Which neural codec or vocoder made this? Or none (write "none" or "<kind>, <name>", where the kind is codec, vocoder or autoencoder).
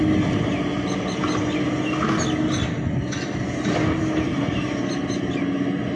none